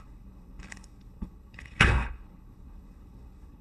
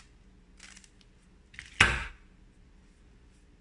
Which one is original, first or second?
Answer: second